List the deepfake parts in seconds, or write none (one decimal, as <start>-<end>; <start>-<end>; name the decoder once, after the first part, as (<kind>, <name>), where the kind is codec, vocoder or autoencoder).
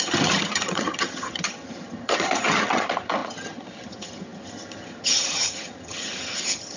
0.0-6.8 (vocoder, HiFi-GAN)